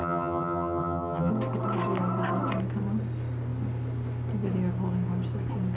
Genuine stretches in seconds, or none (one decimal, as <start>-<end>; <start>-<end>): 1.3-5.8